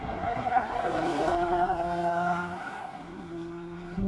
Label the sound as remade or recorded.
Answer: remade